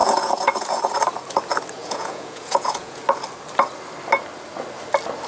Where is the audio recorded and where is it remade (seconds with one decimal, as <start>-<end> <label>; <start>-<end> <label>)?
0.0-0.8 remade; 0.8-1.8 recorded; 1.8-3.0 remade; 3.0-5.3 recorded